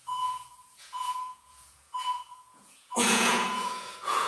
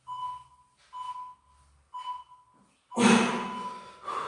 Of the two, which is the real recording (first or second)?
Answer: second